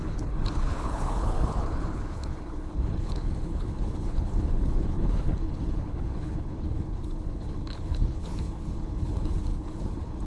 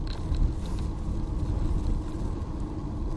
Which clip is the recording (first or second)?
second